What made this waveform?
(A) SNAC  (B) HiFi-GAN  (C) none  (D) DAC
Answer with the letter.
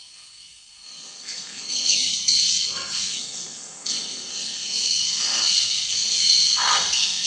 A